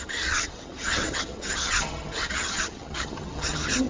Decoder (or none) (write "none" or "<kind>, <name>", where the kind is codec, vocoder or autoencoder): vocoder, HiFi-GAN